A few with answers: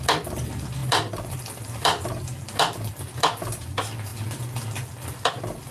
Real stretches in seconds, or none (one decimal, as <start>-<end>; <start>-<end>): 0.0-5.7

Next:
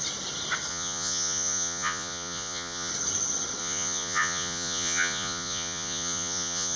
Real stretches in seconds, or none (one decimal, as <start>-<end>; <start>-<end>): 0.0-0.7; 2.9-3.6

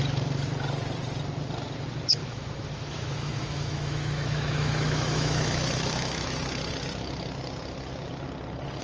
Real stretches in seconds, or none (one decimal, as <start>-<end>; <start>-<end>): 0.0-2.2; 6.4-8.8

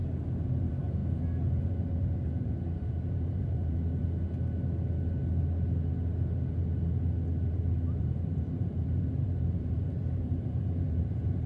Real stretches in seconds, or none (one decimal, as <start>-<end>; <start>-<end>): 0.0-0.6; 1.0-1.7; 4.0-8.0

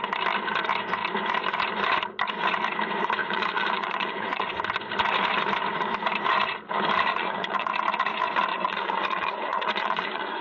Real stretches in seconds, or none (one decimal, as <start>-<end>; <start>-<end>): 0.0-3.2; 4.5-7.1; 7.7-8.5

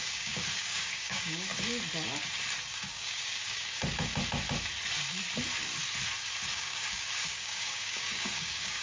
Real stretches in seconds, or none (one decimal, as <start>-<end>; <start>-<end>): 1.5-2.8; 3.8-6.5